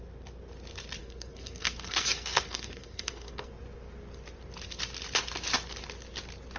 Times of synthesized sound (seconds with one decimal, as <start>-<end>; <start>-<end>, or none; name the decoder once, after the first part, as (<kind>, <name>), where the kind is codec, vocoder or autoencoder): 1.0-3.5 (codec, SNAC)